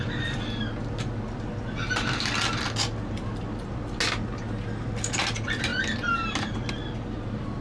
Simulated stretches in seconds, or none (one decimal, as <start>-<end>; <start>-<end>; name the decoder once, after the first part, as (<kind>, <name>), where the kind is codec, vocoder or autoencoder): none